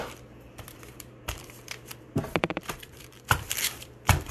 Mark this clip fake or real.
fake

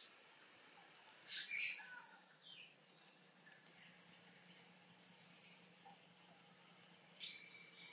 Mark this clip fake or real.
real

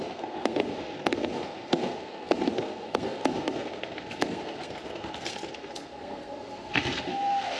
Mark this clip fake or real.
fake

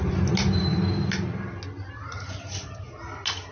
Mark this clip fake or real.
real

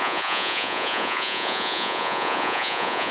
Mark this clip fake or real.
fake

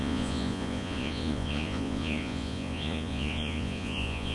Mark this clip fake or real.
fake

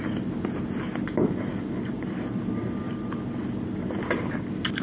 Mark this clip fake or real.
real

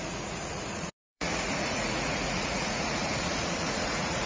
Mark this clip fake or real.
fake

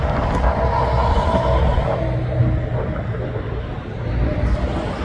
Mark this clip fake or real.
real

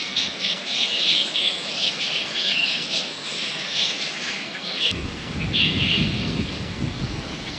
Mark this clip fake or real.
fake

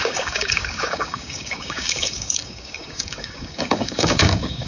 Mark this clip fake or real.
fake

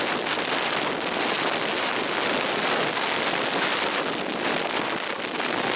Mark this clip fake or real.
real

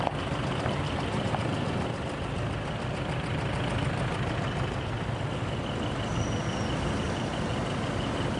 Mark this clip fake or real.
fake